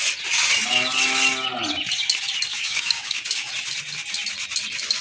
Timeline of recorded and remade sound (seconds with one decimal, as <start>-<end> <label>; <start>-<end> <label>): 0.0-2.5 recorded; 2.5-3.5 remade; 3.5-5.0 recorded